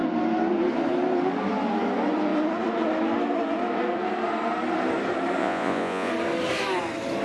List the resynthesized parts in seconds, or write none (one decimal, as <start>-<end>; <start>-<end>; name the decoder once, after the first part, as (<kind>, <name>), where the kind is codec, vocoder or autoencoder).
5.4-6.1 (vocoder, Vocos)